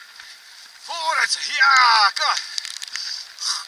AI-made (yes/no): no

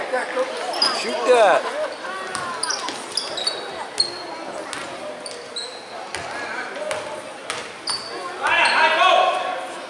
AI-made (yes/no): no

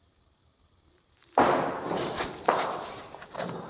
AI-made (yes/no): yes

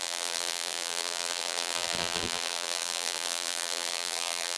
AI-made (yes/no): yes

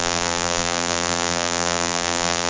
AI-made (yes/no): yes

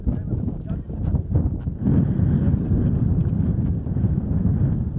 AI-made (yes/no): no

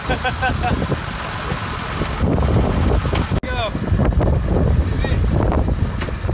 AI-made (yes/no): no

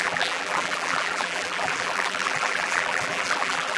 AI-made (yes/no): yes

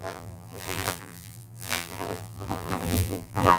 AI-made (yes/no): yes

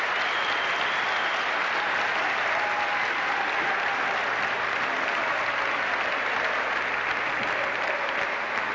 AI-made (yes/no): no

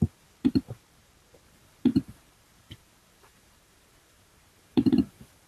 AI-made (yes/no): yes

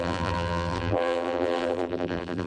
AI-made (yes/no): yes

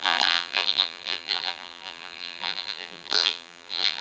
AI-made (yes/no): yes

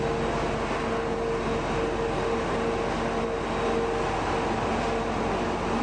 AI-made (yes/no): no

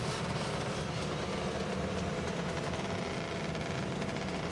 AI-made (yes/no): yes